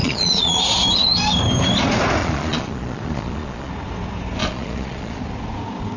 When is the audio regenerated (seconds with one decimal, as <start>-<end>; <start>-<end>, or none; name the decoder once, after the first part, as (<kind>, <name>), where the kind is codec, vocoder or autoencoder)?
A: 0.0-0.6 (vocoder, Vocos); 2.2-3.7; 4.4-5.2